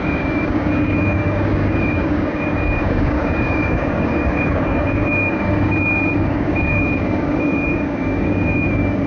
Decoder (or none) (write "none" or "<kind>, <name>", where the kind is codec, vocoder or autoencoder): codec, DAC